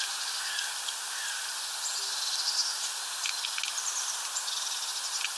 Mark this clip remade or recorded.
recorded